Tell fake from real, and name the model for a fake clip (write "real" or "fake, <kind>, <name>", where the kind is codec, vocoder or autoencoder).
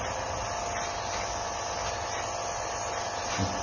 real